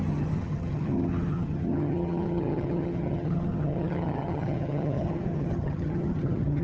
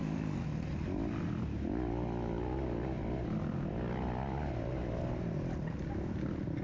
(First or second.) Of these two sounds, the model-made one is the first